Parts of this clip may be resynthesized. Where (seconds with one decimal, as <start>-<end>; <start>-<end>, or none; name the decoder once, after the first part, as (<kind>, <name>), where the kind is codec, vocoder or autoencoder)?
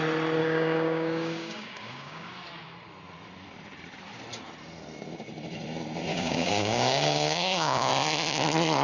0.4-2.3 (codec, DAC); 6.1-7.9